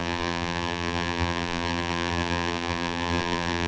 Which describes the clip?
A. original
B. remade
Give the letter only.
B